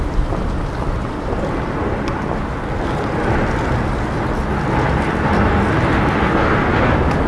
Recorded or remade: recorded